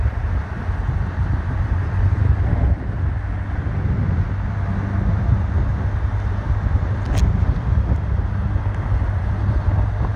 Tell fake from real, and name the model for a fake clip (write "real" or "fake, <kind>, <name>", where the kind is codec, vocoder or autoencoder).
real